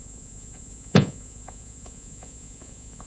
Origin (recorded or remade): remade